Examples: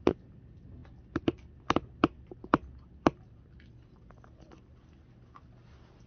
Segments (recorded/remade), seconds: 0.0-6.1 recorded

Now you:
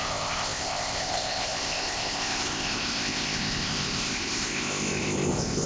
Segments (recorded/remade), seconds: 0.0-5.7 remade

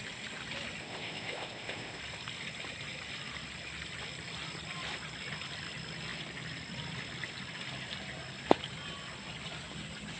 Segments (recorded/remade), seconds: 0.0-0.8 recorded; 0.8-2.0 remade; 2.0-10.2 recorded

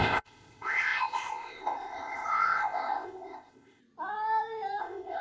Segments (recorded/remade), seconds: 0.0-3.8 remade; 3.8-4.8 recorded; 4.8-5.2 remade